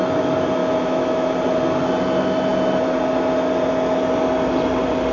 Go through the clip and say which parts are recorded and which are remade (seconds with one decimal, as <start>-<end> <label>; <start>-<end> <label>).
0.0-0.6 recorded; 0.6-1.3 remade; 1.3-5.1 recorded